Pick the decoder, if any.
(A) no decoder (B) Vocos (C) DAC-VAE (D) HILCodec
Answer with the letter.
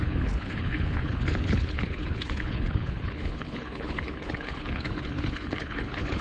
D